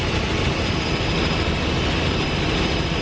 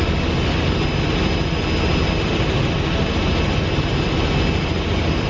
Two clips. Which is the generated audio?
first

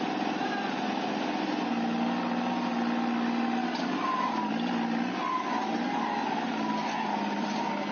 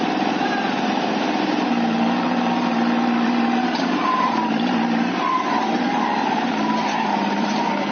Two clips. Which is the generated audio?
second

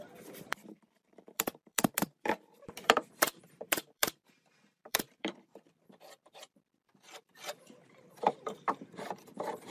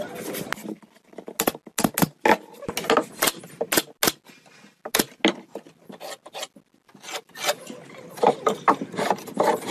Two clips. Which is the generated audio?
first